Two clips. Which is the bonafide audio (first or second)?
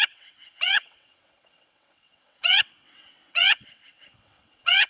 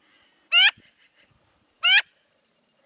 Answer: second